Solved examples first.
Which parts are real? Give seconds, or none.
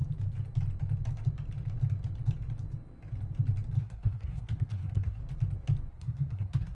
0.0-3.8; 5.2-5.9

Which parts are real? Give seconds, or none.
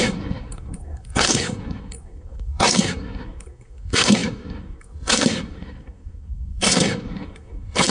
none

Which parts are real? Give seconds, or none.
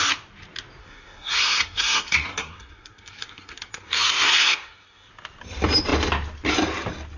0.0-0.8; 5.1-7.2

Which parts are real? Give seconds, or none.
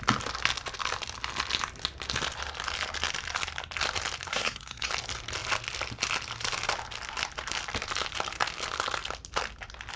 0.0-4.3; 4.9-10.0